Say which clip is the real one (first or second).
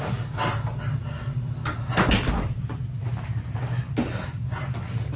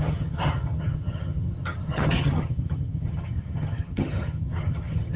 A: first